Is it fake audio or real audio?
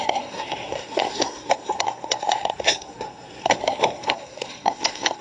fake